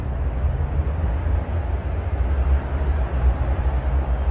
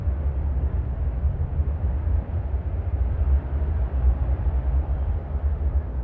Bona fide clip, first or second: first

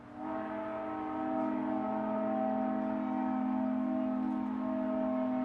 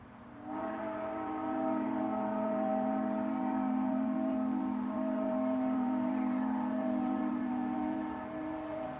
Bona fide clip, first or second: first